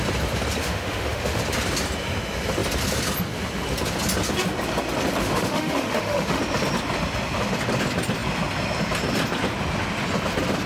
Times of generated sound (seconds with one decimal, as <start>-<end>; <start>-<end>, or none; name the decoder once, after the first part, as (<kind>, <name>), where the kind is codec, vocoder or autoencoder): 0.6-1.4 (autoencoder, DAC-VAE); 5.2-6.4